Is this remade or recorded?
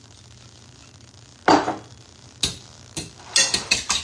recorded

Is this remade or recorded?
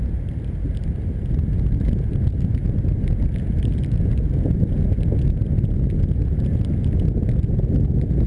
recorded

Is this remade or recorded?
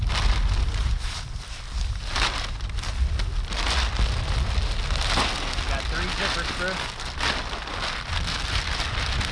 recorded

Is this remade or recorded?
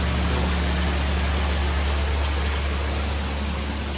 recorded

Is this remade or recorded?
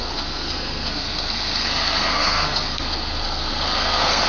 remade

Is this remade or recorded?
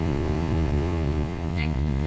remade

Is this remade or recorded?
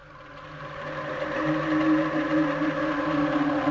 recorded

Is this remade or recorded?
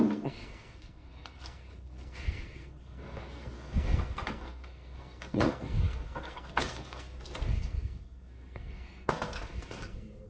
remade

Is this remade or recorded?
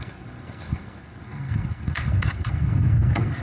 remade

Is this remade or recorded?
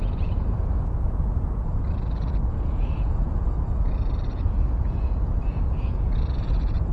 remade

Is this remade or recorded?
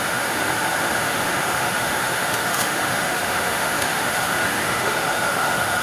remade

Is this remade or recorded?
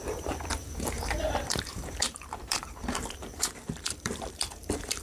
remade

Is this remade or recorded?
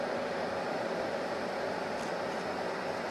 recorded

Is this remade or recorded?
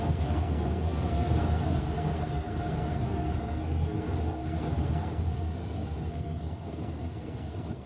remade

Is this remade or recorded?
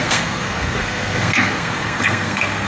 remade